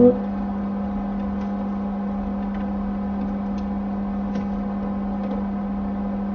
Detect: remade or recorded recorded